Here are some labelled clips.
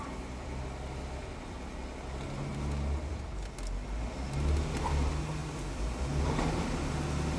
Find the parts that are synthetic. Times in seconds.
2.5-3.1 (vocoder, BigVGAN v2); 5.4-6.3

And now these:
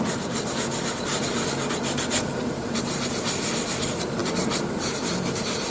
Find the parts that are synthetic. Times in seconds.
0.0-1.1 (vocoder, BigVGAN v2); 2.3-5.7

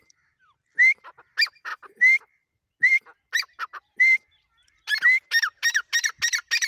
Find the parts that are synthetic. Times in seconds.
none

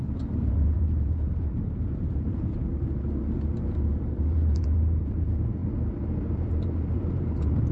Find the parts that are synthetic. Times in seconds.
0.0-7.7 (vocoder, BigVGAN v2)

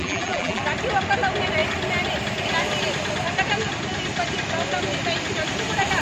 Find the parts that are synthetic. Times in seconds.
0.0-0.6 (vocoder, BigVGAN v2)